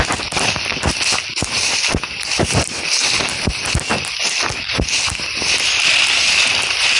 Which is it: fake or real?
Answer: real